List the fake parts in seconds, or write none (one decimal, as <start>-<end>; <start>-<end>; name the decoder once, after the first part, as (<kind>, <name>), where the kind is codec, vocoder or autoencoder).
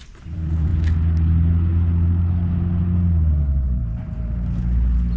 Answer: 0.0-0.7 (vocoder, BigVGAN v2); 3.8-5.2